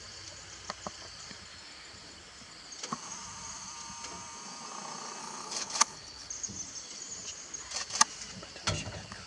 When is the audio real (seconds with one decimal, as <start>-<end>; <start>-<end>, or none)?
0.0-5.2; 6.3-9.3